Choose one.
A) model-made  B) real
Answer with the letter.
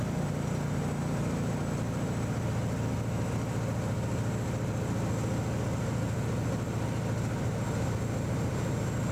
B